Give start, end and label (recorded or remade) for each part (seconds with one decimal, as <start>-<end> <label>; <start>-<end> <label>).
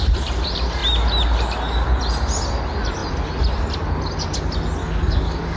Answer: 0.0-4.8 recorded; 4.8-5.6 remade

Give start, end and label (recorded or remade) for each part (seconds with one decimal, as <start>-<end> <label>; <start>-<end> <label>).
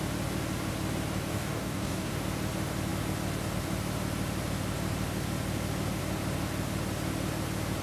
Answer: 0.0-1.3 recorded; 1.3-2.1 remade; 2.1-7.8 recorded